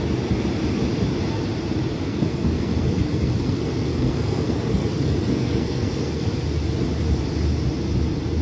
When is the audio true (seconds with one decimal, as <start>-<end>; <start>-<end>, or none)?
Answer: 0.0-2.0; 6.3-8.4